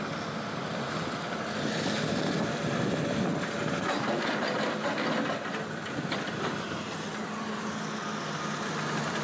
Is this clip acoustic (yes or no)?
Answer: yes